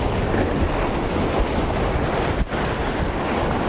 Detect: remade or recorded recorded